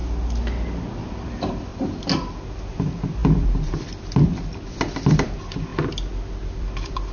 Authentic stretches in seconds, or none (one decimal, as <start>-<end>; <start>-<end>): 0.0-1.0; 1.7-2.6; 5.7-6.5